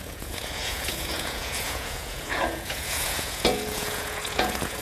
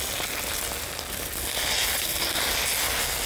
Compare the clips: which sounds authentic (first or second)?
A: second